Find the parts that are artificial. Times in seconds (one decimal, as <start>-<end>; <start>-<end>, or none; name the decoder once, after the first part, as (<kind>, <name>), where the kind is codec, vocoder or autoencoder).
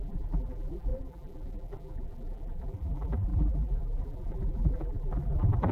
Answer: 0.0-5.7 (vocoder, BigVGAN v2)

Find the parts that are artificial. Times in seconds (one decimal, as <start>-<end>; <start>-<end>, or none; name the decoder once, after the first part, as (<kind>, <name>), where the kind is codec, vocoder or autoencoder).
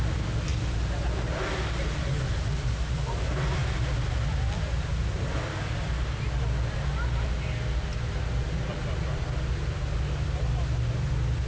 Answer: none